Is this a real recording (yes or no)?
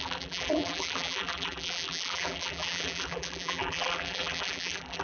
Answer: no